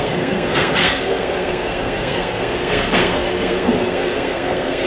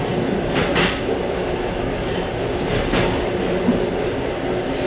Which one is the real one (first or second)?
second